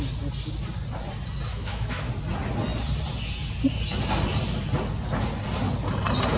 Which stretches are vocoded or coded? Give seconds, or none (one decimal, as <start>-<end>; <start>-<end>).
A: 1.5-2.1

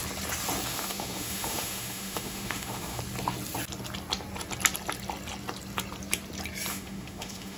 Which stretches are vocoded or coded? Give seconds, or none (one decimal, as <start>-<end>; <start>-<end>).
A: 0.7-3.0; 6.7-7.6

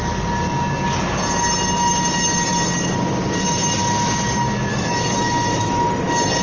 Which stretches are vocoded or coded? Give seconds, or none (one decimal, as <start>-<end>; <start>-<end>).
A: 4.7-6.0

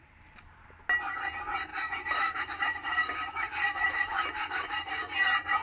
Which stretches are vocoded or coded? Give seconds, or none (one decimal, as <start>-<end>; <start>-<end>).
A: 1.7-5.1

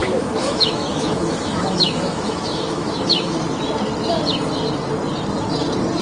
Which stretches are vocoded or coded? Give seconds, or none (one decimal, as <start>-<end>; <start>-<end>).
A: 0.0-3.4

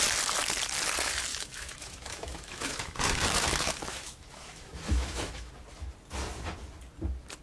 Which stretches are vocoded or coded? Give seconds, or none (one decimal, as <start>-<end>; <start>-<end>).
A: 1.3-5.5

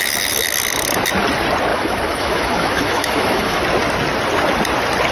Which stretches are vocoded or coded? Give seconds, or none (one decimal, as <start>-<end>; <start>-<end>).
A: 1.7-3.6

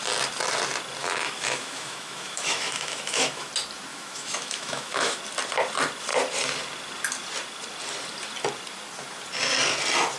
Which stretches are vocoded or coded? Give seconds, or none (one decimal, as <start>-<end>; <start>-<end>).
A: 1.0-3.5; 3.9-5.2